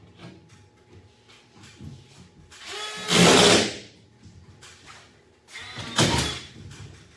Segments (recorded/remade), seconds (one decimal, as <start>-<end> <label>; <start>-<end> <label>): 0.0-7.2 recorded